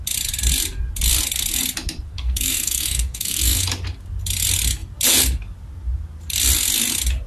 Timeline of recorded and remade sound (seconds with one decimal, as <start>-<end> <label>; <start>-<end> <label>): 0.0-2.1 recorded; 2.1-3.6 remade; 3.6-7.3 recorded

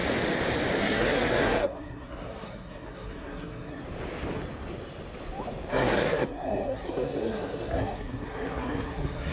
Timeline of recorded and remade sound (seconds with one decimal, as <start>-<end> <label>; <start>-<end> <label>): 0.0-0.8 recorded; 0.8-3.8 remade; 3.8-5.7 recorded; 5.7-9.3 remade

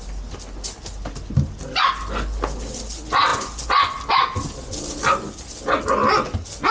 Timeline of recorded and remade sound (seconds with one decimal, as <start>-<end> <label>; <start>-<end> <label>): 0.0-6.7 recorded

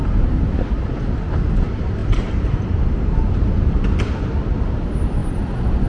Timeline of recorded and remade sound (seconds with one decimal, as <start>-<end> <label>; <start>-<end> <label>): 0.0-0.5 remade; 0.5-2.0 recorded; 2.0-3.1 remade; 3.1-5.2 recorded; 5.2-5.9 remade

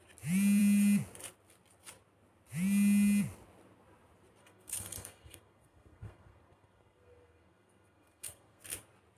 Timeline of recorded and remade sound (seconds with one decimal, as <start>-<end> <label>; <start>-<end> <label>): 0.0-4.4 recorded; 4.4-8.6 remade; 8.6-9.2 recorded

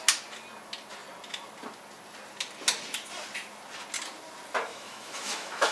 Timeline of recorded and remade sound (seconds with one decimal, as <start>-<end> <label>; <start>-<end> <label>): 0.0-4.7 recorded; 4.7-5.7 remade